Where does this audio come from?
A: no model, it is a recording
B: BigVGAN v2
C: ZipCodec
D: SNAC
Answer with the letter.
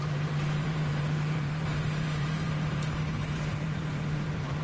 B